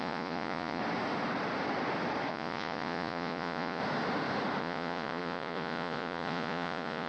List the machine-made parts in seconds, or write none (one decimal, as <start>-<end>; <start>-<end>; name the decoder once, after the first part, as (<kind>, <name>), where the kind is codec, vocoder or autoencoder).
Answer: 0.0-0.8 (vocoder, Vocos); 2.3-3.8; 4.6-7.1